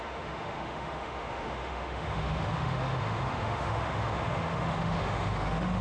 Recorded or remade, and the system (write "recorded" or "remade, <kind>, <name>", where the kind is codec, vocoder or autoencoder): remade, autoencoder, DAC-VAE